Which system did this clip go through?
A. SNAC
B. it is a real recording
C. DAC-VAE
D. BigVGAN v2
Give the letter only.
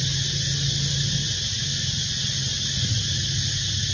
B